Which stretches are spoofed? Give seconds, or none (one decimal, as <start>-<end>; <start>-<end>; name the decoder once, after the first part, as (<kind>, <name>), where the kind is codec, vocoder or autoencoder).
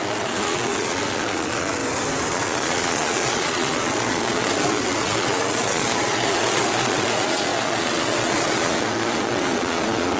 0.0-1.8 (vocoder, Vocos); 2.3-10.2